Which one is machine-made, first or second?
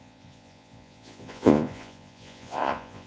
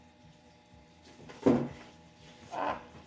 first